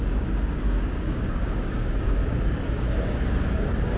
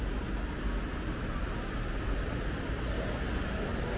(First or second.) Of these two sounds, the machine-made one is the first